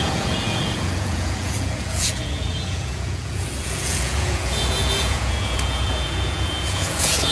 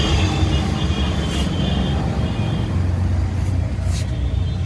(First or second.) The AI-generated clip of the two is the first